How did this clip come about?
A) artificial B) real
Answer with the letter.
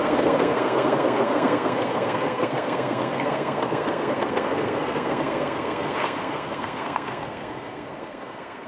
A